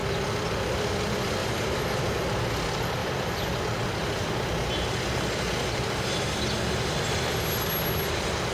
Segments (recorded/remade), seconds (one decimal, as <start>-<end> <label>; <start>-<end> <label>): 0.0-1.4 recorded; 1.4-2.0 remade; 2.0-3.0 recorded; 3.0-3.6 remade; 3.6-8.5 recorded